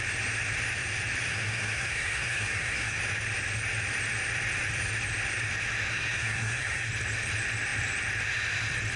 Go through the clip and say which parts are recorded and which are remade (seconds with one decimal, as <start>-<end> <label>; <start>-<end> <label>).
0.0-1.3 recorded; 1.3-3.0 remade; 3.0-5.9 recorded; 5.9-6.9 remade; 6.9-9.0 recorded